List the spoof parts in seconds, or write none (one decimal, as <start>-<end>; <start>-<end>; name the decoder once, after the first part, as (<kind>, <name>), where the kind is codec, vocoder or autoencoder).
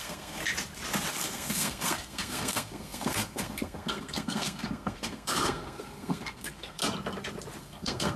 0.0-0.4 (codec, SNAC); 1.1-6.8; 7.6-8.2